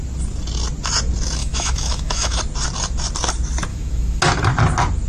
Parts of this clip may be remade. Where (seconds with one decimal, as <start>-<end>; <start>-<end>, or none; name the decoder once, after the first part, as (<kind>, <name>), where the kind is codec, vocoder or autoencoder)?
1.4-2.4 (autoencoder, DAC-VAE); 3.7-4.2